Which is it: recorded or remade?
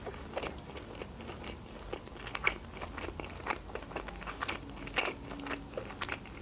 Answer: recorded